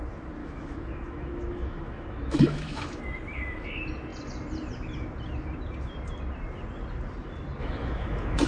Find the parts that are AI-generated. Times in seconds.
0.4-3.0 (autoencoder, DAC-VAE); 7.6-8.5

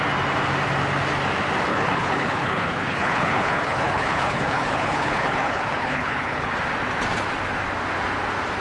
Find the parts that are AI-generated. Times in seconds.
1.7-6.5 (codec, HILCodec)

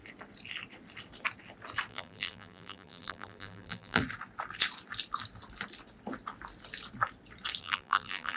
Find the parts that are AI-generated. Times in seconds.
1.9-4.0 (vocoder, BigVGAN v2); 7.6-8.4